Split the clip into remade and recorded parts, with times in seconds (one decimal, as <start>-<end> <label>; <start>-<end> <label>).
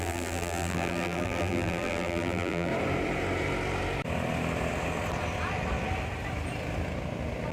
0.0-2.7 remade; 2.7-7.5 recorded